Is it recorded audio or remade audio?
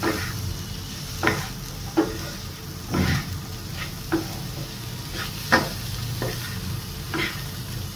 remade